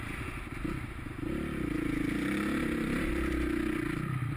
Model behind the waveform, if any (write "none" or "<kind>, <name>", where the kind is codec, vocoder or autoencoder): none